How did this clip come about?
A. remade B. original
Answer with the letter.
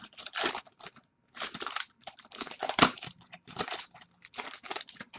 A